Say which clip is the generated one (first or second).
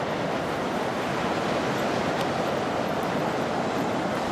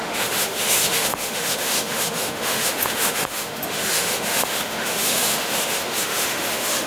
second